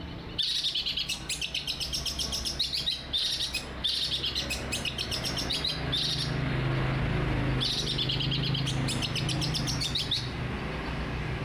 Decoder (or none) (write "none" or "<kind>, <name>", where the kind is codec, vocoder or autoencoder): none